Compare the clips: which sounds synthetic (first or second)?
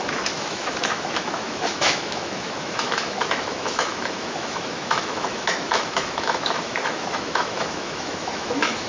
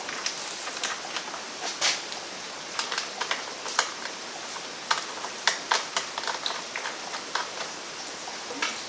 first